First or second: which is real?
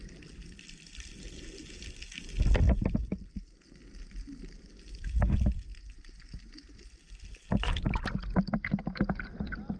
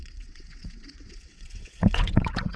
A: first